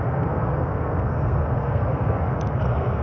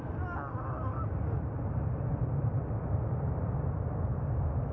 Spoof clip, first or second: first